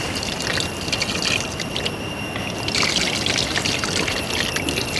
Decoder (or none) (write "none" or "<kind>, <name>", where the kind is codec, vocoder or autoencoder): vocoder, BigVGAN v2